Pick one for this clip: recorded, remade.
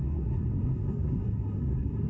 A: remade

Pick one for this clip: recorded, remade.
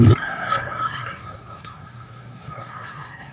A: remade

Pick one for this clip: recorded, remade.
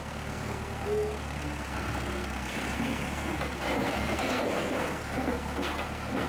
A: remade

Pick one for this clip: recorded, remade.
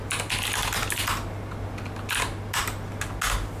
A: recorded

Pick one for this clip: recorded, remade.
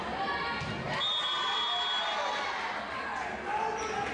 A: recorded